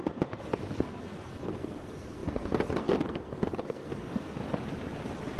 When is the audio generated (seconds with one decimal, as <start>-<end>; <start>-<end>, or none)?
0.0-4.4